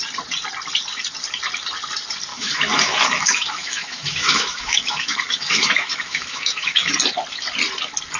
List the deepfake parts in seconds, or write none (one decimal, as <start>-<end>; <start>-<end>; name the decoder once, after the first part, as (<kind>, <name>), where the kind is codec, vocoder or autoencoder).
2.3-6.9 (autoencoder, DAC-VAE)